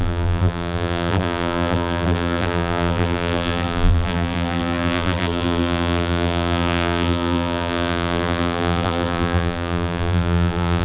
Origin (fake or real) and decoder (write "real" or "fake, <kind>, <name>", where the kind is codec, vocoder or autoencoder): fake, vocoder, BigVGAN v2